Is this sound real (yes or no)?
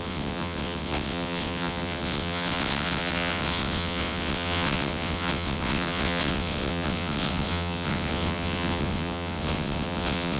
no